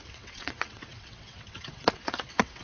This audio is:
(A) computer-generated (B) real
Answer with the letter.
A